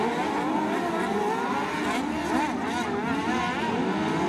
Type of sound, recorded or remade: recorded